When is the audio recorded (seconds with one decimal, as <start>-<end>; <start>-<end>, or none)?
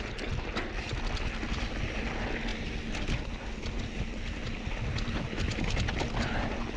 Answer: 0.0-6.8